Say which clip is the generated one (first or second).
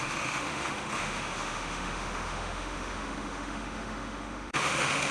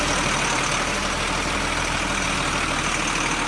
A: first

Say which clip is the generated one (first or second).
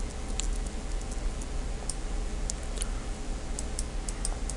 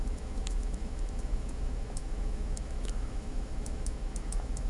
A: second